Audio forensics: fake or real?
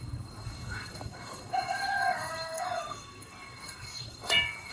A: fake